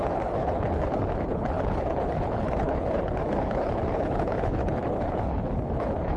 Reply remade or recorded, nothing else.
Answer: remade